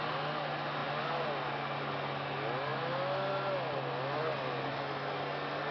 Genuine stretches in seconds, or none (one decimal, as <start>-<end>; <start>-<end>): 0.0-5.7